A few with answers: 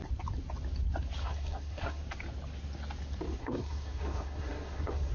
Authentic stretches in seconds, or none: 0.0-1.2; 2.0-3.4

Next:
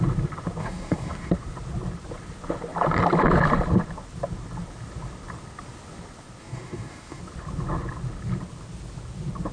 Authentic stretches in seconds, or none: 0.0-0.6; 1.3-6.4; 7.2-9.5

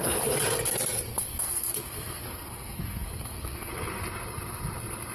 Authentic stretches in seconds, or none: 0.0-1.1; 3.7-5.1

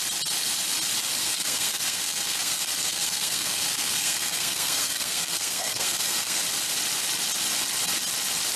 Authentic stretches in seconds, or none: 0.0-1.2; 6.4-8.6